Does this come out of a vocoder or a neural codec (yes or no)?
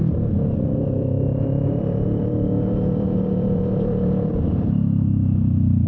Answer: yes